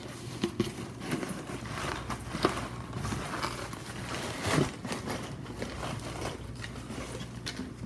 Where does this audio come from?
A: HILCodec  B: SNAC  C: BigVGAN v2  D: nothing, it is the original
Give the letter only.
D